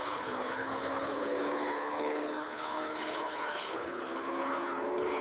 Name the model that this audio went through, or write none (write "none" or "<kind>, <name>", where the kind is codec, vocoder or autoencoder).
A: codec, HILCodec